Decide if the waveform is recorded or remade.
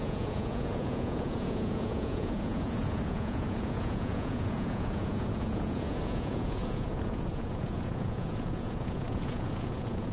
remade